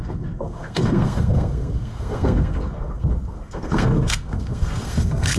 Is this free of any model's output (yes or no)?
no